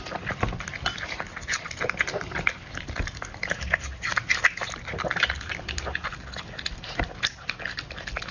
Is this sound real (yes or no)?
yes